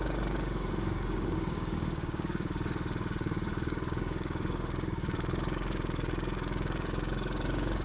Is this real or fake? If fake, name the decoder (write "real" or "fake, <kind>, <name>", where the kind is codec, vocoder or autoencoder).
fake, codec, DAC